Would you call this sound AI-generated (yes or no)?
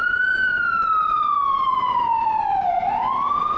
no